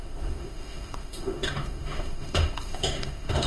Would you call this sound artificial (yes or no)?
yes